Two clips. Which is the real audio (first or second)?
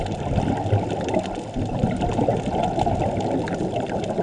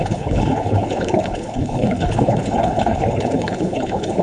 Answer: first